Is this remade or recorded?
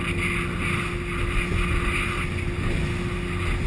recorded